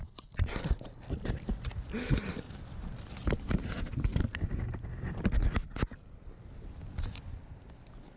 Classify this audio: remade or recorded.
recorded